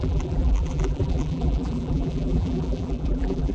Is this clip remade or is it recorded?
remade